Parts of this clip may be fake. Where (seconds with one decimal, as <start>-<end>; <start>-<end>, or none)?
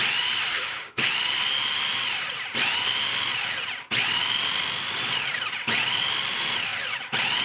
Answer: 0.5-1.1